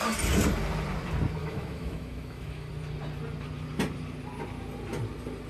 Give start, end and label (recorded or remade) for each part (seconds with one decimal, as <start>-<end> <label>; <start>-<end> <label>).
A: 0.0-1.4 recorded; 1.4-2.7 remade; 2.7-5.5 recorded